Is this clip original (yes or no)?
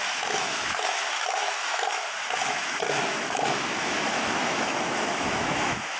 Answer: no